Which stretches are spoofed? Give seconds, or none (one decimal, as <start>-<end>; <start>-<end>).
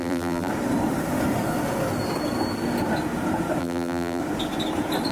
0.0-0.5; 3.6-4.2